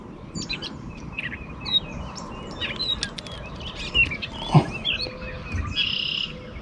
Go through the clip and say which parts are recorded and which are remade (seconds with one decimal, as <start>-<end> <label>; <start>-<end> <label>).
0.0-2.6 remade; 2.6-6.6 recorded